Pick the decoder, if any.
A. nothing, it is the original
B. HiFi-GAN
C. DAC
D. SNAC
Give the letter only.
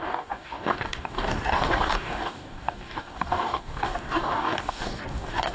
C